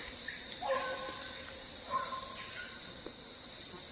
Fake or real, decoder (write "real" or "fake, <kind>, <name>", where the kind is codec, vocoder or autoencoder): real